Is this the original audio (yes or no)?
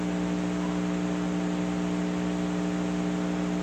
yes